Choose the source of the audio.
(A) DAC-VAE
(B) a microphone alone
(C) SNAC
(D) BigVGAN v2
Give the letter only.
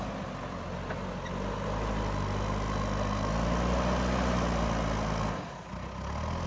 B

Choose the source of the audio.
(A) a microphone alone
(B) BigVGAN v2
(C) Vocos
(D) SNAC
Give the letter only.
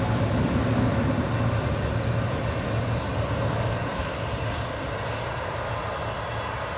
A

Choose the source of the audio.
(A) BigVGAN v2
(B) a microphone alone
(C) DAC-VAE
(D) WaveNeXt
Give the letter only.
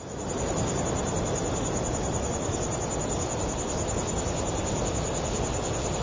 B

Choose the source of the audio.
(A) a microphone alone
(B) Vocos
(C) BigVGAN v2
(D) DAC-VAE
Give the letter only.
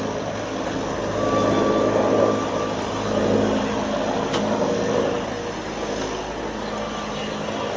A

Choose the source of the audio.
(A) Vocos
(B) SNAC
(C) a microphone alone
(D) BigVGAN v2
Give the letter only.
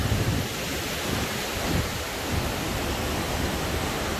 C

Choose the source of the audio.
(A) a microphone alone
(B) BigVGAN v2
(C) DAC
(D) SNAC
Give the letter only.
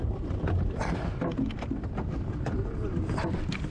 A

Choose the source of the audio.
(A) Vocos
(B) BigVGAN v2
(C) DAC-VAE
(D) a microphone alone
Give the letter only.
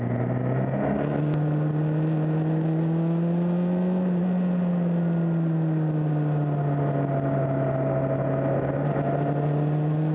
D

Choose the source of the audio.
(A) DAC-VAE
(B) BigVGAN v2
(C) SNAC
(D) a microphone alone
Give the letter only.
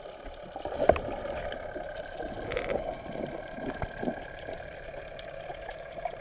B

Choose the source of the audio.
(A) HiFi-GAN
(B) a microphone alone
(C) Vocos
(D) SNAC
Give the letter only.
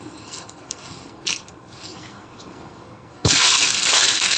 D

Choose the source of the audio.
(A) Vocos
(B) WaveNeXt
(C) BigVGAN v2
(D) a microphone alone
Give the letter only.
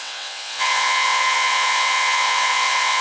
B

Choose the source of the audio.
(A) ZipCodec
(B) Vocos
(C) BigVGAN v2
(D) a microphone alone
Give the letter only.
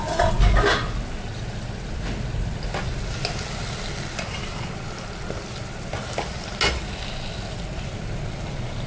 D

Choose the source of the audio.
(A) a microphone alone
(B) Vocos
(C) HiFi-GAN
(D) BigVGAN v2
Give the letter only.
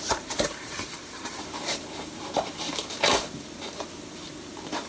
D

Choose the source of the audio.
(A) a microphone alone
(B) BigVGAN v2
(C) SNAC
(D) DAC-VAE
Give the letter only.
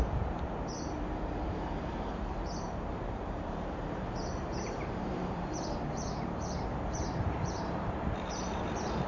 B